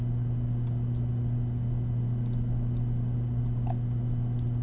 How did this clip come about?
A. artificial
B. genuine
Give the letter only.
B